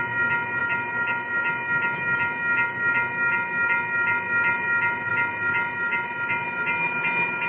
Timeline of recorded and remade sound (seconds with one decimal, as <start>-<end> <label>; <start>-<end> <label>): 0.0-7.5 recorded